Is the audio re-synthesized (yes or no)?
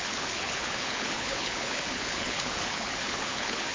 yes